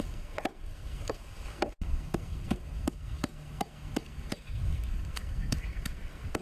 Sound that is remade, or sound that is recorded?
remade